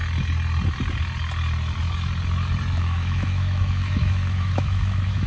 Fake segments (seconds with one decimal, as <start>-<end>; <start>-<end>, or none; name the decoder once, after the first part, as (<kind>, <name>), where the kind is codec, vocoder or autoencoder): 2.7-5.3 (autoencoder, DAC-VAE)